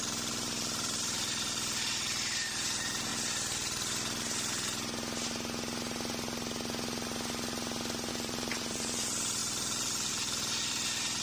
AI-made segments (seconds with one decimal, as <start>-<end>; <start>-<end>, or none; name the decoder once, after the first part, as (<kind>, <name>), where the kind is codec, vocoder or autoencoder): 0.0-3.1 (vocoder, BigVGAN v2); 8.1-11.2